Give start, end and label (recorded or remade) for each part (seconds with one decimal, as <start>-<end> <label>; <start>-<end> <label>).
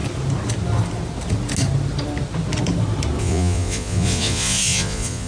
0.0-3.2 recorded; 3.2-5.3 remade